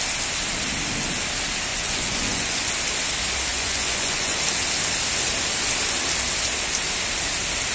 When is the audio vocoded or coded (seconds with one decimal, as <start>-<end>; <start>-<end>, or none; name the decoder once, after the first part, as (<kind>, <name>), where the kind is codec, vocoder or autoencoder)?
1.7-2.7 (vocoder, Vocos); 3.5-4.4